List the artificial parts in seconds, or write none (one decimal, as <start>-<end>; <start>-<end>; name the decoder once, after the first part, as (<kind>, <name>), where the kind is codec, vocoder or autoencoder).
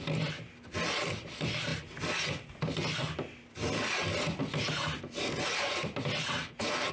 none